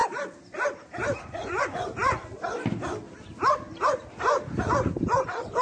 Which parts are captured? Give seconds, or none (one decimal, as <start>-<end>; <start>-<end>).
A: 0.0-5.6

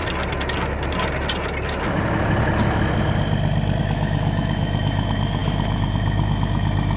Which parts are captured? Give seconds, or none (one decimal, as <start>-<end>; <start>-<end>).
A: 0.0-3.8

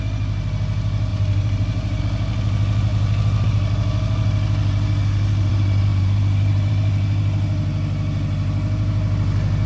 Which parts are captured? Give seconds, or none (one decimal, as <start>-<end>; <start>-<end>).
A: 0.0-1.1; 2.0-5.9; 6.7-9.7

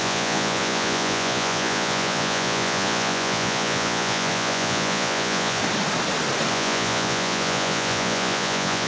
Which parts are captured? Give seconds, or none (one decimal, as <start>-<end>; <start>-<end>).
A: 5.6-6.5

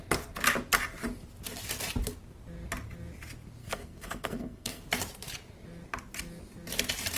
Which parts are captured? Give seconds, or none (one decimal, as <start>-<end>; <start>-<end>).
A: 0.0-3.6; 4.8-7.2